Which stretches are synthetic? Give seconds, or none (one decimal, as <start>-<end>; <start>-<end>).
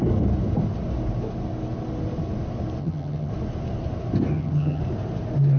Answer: 2.8-3.3; 4.3-4.8